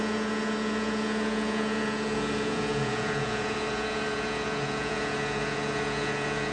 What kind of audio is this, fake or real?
fake